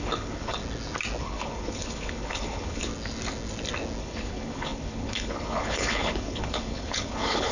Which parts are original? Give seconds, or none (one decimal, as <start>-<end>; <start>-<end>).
0.6-1.2; 2.9-4.0